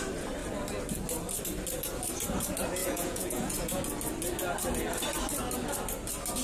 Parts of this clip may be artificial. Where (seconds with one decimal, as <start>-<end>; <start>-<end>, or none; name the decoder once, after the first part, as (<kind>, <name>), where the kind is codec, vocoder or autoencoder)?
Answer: 2.8-3.8 (vocoder, Vocos)